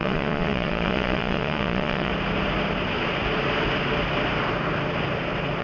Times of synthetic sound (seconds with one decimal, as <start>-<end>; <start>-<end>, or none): 0.0-2.1

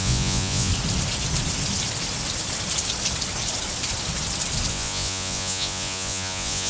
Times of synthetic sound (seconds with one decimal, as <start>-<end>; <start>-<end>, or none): 0.0-0.7; 4.7-6.7

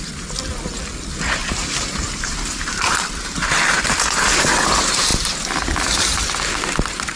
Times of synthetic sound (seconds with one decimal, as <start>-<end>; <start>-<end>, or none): none

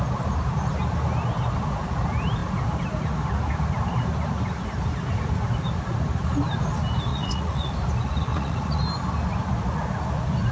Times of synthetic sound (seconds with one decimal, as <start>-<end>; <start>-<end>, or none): 7.1-7.7; 8.3-8.8

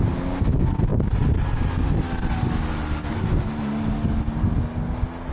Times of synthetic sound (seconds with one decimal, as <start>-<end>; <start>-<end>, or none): none